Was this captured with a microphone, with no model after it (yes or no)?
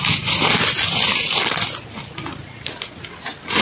yes